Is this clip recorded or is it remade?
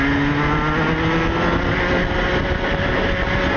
recorded